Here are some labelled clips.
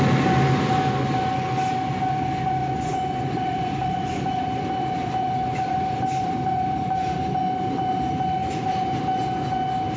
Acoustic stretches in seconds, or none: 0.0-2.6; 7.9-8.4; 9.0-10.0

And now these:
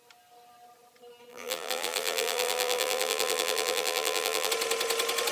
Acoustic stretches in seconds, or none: 0.0-1.3; 4.5-5.3

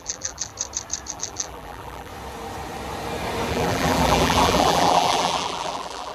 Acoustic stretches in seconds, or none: 0.5-1.1; 2.1-3.5

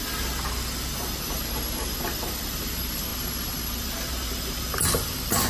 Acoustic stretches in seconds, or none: 0.0-5.5